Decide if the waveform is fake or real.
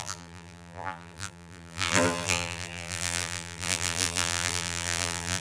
fake